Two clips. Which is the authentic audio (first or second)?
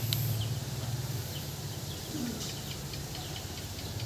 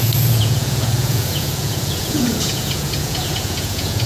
first